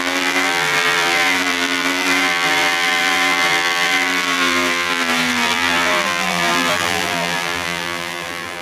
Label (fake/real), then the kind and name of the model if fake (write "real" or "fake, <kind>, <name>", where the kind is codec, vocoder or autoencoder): fake, vocoder, BigVGAN v2